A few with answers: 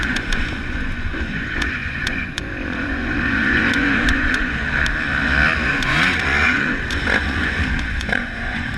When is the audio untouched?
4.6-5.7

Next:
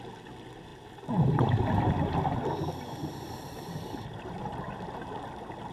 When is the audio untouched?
0.0-3.0; 4.7-5.7

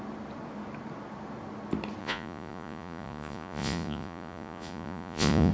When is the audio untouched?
0.0-2.0

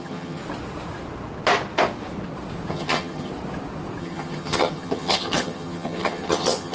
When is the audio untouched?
0.4-2.7; 3.3-4.0